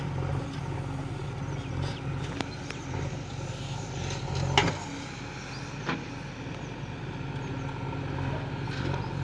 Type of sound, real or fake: real